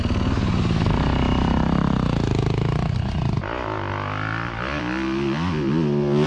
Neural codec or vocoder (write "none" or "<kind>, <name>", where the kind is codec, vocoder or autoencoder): none